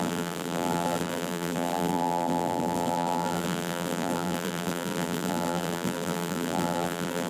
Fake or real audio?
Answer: fake